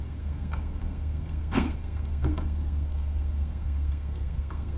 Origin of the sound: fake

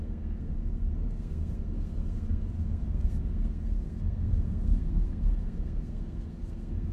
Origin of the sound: fake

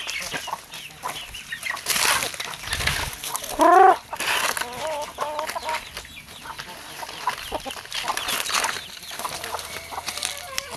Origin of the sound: real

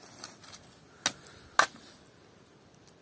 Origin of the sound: real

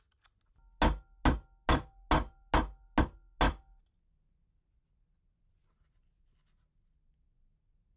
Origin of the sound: real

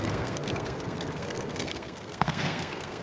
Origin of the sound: fake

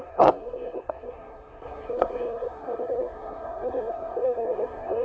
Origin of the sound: fake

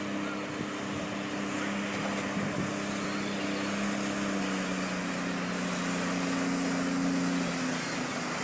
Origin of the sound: real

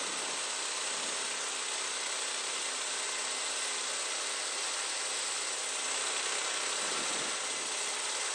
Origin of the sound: real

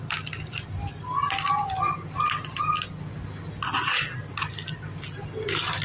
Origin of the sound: real